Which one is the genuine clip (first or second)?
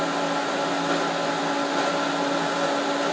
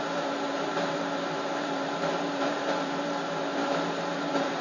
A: first